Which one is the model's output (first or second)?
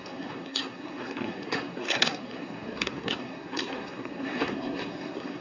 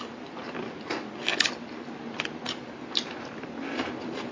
first